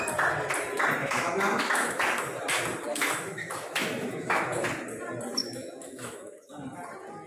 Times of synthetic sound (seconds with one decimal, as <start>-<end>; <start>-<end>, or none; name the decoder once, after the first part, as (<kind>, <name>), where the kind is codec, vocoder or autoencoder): 1.0-2.2 (autoencoder, DAC-VAE); 2.9-4.5; 5.4-6.5